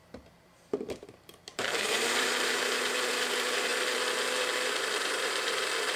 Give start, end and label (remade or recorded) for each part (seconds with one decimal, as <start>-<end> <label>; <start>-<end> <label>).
0.0-2.6 remade; 2.6-6.0 recorded